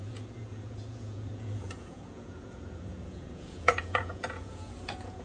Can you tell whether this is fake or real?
fake